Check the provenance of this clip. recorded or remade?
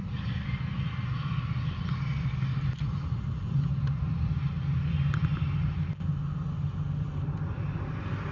recorded